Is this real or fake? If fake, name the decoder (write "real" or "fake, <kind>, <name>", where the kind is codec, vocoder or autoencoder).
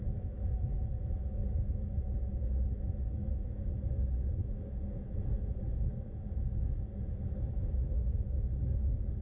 fake, autoencoder, DAC-VAE